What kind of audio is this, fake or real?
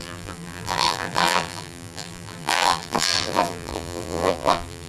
fake